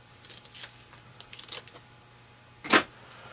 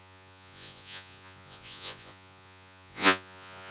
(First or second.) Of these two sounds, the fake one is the second